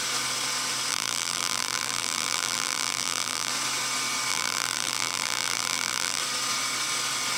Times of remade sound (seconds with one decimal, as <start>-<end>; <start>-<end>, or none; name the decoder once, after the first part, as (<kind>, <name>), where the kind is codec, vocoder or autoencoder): 0.9-3.5 (vocoder, BigVGAN v2); 4.3-6.2